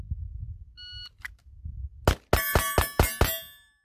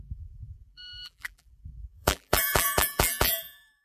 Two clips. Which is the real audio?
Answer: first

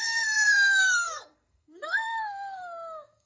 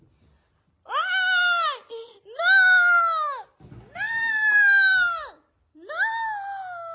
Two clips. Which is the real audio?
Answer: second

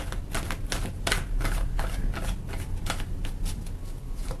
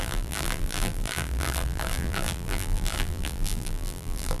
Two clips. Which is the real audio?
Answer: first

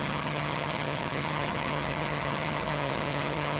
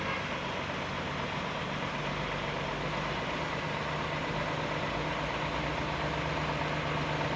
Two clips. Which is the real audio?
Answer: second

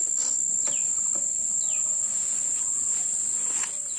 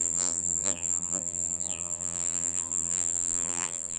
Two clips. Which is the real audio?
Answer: first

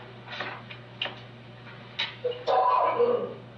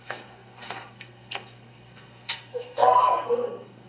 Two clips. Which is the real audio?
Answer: first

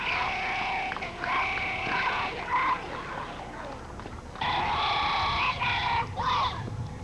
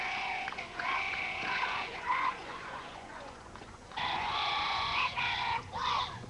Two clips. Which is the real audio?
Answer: first